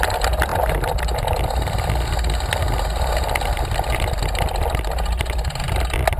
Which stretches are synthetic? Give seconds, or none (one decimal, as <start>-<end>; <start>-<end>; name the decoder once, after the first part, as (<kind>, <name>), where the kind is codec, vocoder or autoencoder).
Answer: none